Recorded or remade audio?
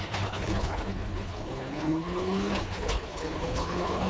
remade